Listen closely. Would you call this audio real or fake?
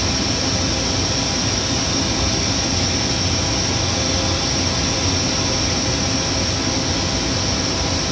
real